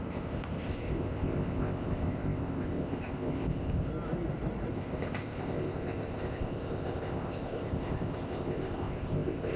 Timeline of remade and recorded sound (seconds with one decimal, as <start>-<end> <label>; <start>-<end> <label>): 0.0-3.9 remade; 3.9-4.7 recorded; 4.7-9.6 remade